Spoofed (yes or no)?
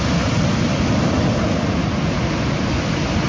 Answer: no